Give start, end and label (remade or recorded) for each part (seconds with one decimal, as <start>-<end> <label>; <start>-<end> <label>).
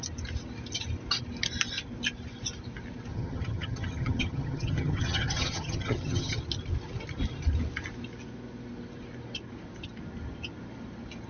0.0-3.1 recorded; 3.1-6.4 remade; 6.4-11.3 recorded